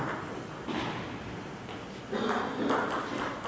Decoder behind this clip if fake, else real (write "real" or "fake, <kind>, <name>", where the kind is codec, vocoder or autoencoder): real